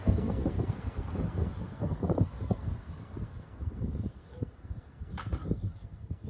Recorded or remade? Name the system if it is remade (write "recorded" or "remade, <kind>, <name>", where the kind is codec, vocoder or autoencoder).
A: remade, codec, SNAC